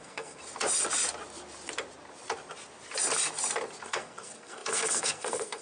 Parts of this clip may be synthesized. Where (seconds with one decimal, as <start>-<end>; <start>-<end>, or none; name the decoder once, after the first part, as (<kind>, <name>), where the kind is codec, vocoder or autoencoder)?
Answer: 0.0-0.4 (codec, SNAC); 3.8-5.6